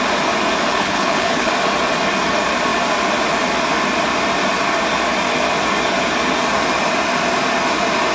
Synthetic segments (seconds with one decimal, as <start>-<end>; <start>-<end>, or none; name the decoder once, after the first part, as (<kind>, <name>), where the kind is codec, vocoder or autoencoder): 0.7-1.5 (codec, HILCodec)